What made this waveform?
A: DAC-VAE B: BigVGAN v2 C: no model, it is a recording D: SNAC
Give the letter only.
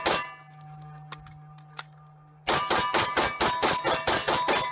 C